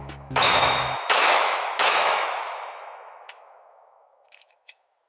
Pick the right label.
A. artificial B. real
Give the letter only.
A